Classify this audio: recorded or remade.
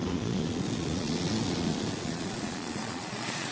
remade